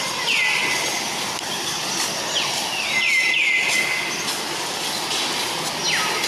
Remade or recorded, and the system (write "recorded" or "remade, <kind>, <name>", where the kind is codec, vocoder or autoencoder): recorded